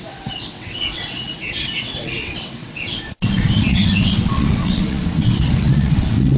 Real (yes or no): no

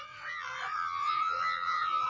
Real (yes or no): no